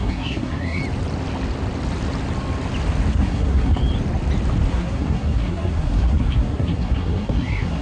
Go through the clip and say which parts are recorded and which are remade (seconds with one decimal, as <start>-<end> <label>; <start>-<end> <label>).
0.0-0.8 remade; 0.8-3.1 recorded; 3.1-3.8 remade; 3.8-4.7 recorded; 4.7-7.8 remade